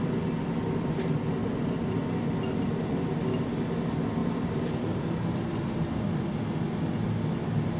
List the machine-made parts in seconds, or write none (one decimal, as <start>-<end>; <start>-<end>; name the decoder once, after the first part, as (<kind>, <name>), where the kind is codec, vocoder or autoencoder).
4.2-5.1 (vocoder, BigVGAN v2)